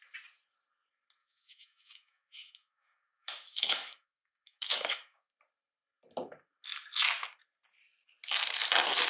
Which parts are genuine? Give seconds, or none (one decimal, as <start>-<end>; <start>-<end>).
0.0-1.2; 5.3-9.1

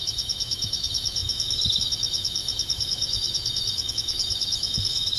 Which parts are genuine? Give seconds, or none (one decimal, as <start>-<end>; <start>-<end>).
none

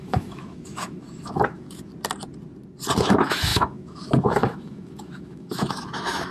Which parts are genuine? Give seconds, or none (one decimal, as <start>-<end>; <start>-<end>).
1.9-3.0

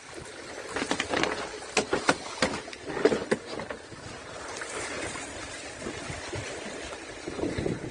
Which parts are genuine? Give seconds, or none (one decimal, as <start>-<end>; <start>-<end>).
0.0-7.9

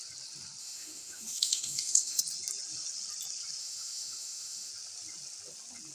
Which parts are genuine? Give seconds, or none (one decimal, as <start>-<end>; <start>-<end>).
0.0-0.6; 2.2-3.6; 4.7-5.9